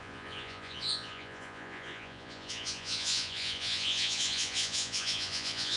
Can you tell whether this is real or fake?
fake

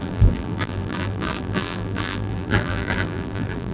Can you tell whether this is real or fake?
fake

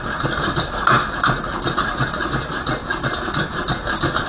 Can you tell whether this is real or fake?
real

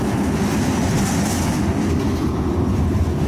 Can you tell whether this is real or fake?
real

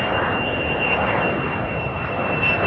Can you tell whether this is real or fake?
real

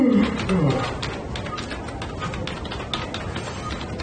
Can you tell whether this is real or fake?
real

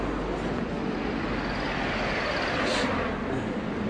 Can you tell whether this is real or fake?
real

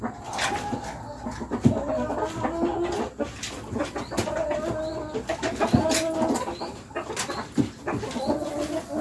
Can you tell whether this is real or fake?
real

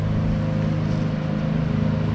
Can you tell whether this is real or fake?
real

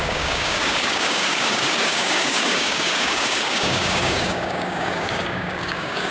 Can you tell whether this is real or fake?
fake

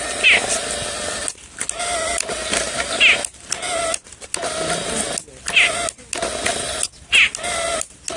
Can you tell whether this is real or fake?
real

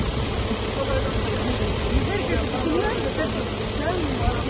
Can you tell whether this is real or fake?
real